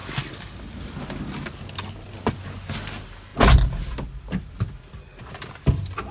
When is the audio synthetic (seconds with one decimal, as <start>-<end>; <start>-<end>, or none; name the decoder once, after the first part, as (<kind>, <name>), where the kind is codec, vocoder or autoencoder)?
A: none